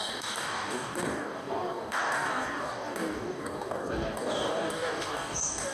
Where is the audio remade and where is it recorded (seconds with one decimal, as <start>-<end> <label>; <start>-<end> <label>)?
0.0-5.7 remade